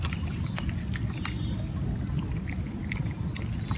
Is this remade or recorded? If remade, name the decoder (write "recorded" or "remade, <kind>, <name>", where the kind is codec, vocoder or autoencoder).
recorded